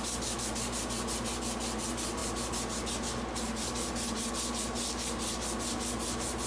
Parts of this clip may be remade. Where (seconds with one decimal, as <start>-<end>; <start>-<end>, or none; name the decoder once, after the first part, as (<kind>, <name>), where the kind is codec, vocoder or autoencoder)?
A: none

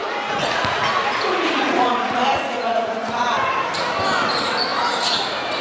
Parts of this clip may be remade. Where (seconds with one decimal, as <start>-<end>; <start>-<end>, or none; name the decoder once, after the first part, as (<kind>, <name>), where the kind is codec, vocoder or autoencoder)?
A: 0.0-3.4 (vocoder, Vocos)

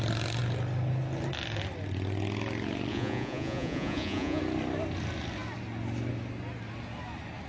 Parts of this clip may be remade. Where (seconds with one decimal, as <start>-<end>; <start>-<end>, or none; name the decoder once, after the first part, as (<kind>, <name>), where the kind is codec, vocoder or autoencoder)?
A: 2.9-4.4 (vocoder, Vocos)

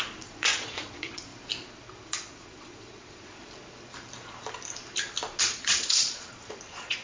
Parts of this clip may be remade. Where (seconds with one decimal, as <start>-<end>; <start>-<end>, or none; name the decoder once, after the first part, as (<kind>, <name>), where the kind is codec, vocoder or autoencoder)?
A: 0.0-1.3 (vocoder, Vocos); 2.3-3.4; 5.4-7.0